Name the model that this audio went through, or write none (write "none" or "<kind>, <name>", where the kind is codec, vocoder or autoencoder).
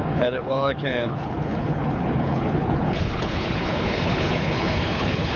codec, HILCodec